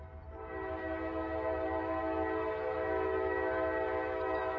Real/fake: real